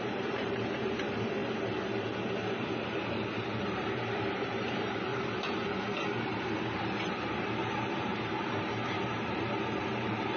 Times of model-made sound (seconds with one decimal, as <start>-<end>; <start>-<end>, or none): 0.0-1.4; 3.6-10.4